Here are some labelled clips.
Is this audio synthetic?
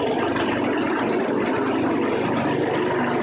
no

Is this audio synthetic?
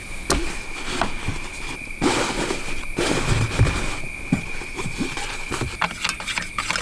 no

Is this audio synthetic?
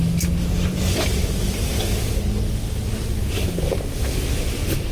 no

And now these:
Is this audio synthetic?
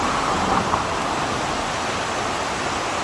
no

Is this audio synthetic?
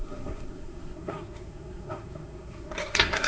yes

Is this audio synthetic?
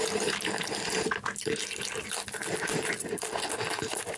no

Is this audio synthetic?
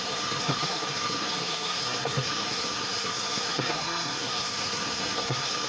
yes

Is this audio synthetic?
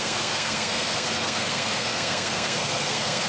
yes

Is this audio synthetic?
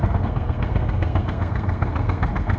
yes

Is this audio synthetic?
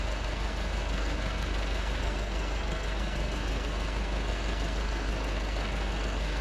yes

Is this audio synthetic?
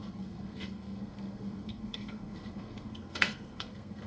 yes